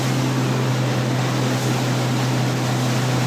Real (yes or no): yes